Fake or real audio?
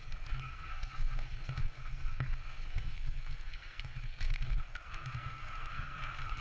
fake